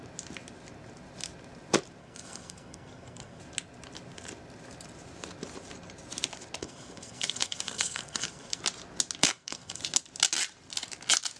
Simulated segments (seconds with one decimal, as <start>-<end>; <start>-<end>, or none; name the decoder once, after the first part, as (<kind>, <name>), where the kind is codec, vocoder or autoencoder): 2.0-3.4 (codec, SNAC); 6.6-8.6; 9.2-9.8